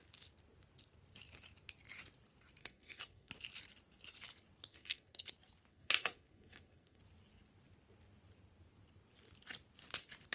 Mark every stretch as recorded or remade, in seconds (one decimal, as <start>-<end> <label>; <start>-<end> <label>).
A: 0.0-2.6 recorded; 2.6-3.3 remade; 3.3-4.7 recorded; 4.7-5.3 remade; 5.3-5.7 recorded; 5.7-7.0 remade; 7.0-10.3 recorded